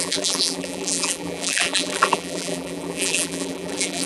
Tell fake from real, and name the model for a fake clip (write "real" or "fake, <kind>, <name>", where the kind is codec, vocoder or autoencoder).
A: fake, vocoder, BigVGAN v2